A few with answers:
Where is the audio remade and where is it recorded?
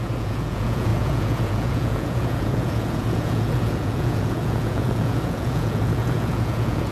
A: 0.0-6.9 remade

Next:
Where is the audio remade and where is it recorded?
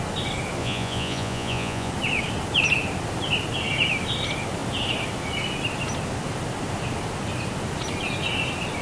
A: 0.0-0.6 recorded; 0.6-1.9 remade; 1.9-8.8 recorded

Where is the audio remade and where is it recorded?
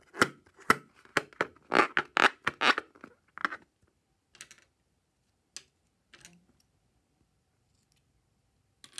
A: 0.0-9.0 recorded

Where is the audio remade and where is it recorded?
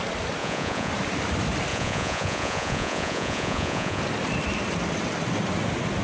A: 0.0-0.4 recorded; 0.4-0.9 remade; 0.9-1.7 recorded; 1.7-4.0 remade; 4.0-6.0 recorded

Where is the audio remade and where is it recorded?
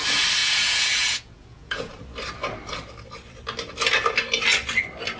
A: 0.0-0.4 recorded; 0.4-1.9 remade; 1.9-5.2 recorded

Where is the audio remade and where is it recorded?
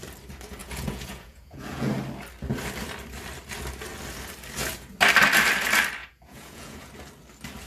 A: 0.0-0.6 recorded; 0.6-1.9 remade; 1.9-6.0 recorded; 6.0-6.9 remade; 6.9-7.7 recorded